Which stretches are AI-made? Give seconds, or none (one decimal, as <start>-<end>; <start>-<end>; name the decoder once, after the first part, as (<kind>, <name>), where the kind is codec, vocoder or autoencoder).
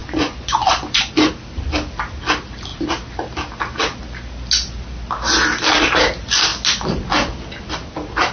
0.0-1.3 (vocoder, Vocos)